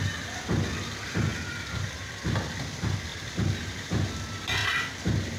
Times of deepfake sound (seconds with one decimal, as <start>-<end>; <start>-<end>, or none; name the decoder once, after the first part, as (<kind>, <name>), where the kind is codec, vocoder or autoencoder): 1.3-2.2 (vocoder, BigVGAN v2); 3.1-3.8; 4.6-5.4